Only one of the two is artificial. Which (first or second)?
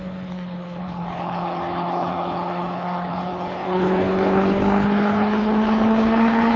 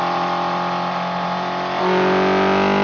first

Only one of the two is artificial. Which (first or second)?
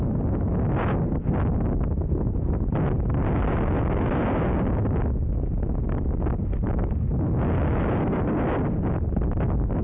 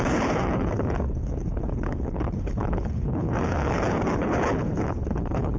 second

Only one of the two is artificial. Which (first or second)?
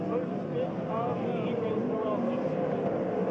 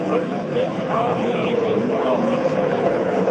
second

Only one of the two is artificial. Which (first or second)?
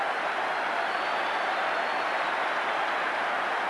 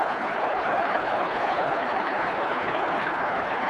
second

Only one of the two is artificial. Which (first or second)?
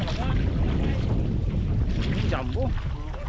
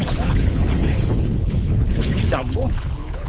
second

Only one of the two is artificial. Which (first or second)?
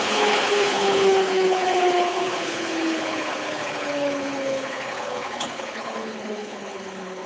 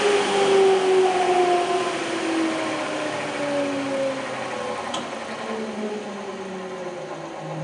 first